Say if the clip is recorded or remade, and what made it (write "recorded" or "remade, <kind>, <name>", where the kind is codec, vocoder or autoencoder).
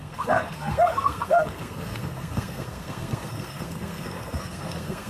remade, codec, SNAC